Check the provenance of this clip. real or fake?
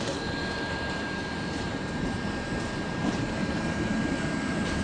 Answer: fake